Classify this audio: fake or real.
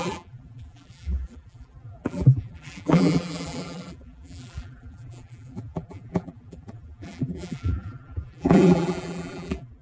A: fake